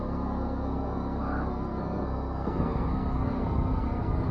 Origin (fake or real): fake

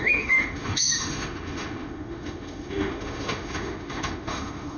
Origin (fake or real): fake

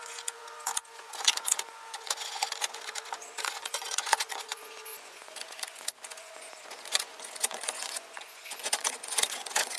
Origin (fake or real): fake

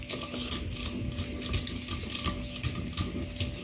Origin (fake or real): real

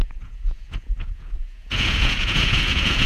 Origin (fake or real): fake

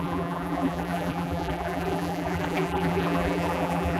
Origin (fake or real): fake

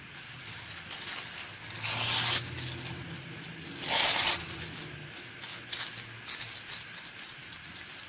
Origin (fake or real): real